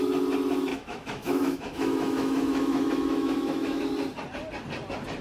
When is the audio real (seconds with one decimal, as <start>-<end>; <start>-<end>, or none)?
0.0-0.7; 3.8-5.2